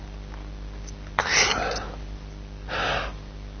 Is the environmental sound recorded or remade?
recorded